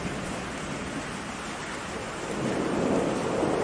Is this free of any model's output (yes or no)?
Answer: yes